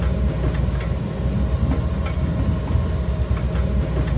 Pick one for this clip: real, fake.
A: real